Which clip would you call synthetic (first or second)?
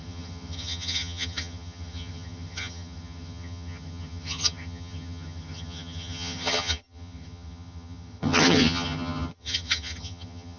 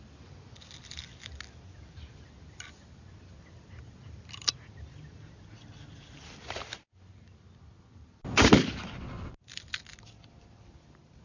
first